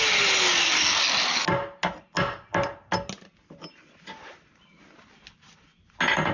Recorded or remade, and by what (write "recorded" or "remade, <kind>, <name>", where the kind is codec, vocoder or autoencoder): recorded